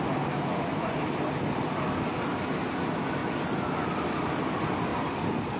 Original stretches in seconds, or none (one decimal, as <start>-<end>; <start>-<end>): 0.0-4.9